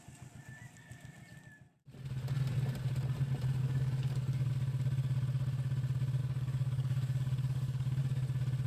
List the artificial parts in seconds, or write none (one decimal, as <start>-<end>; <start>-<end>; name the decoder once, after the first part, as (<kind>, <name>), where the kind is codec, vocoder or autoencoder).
3.6-4.5 (codec, DAC); 6.2-8.0